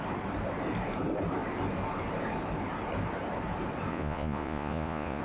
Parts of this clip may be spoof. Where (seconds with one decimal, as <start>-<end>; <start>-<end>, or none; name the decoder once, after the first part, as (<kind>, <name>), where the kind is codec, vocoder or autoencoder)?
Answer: 3.9-5.2 (vocoder, Vocos)